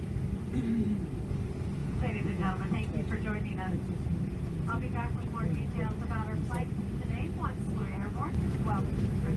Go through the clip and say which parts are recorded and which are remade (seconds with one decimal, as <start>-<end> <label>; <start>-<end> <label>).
0.0-1.8 recorded; 1.8-2.7 remade; 2.7-7.8 recorded; 7.8-8.3 remade; 8.3-9.4 recorded

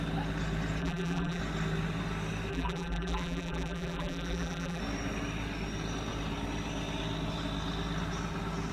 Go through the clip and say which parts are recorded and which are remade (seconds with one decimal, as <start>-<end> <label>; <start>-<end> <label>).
0.0-0.8 recorded; 0.8-1.4 remade; 1.4-2.5 recorded; 2.5-4.8 remade; 4.8-8.7 recorded